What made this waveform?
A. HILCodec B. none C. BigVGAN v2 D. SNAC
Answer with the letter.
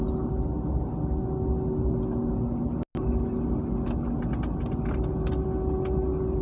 B